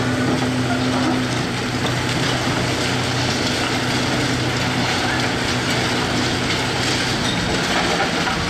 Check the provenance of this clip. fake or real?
real